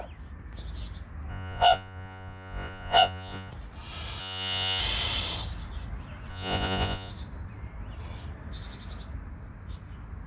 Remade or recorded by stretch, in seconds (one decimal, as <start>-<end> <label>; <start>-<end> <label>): 0.0-1.3 recorded; 1.3-3.5 remade; 3.5-4.2 recorded; 4.2-4.8 remade; 4.8-6.3 recorded; 6.3-7.1 remade; 7.1-10.3 recorded